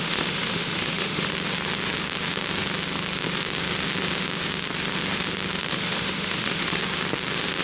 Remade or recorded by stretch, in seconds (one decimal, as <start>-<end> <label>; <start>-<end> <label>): 0.0-1.3 remade; 1.3-5.7 recorded; 5.7-6.8 remade; 6.8-7.6 recorded